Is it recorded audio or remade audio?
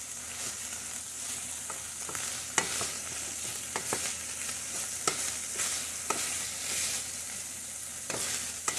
recorded